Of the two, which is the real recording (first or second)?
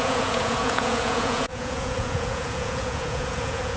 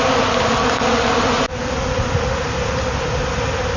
second